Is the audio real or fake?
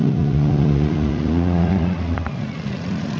fake